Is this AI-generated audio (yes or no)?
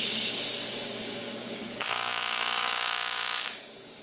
yes